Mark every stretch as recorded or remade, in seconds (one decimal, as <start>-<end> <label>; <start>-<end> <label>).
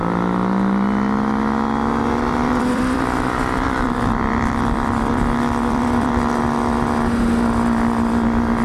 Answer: 0.0-2.3 recorded; 2.3-6.4 remade; 6.4-8.6 recorded